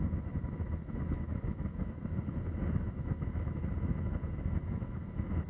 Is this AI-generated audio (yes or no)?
yes